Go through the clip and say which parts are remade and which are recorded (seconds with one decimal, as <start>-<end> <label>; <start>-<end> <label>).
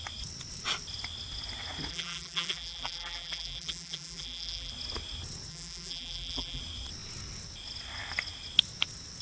0.0-1.9 recorded; 1.9-4.7 remade; 4.7-5.5 recorded; 5.5-6.6 remade; 6.6-9.2 recorded